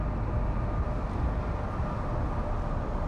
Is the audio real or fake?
real